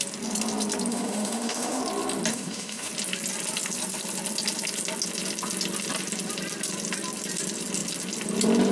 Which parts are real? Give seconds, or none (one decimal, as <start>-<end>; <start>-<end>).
0.0-0.9; 1.8-2.3; 2.9-8.7